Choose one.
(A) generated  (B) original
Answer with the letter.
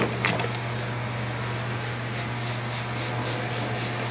B